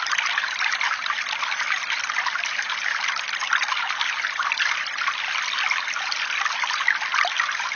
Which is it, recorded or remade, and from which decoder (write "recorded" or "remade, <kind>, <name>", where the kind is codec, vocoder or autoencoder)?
recorded